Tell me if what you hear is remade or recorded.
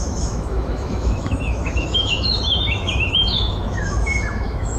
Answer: remade